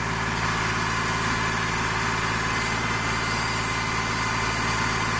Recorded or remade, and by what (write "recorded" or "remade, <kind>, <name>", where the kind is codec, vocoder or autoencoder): recorded